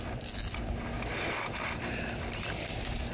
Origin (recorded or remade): recorded